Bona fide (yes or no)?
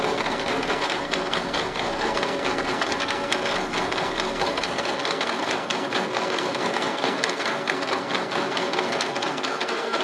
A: no